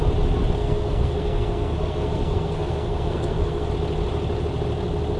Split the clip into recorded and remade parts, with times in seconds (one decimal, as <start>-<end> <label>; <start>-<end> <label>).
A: 0.0-0.6 recorded; 0.6-3.7 remade; 3.7-5.2 recorded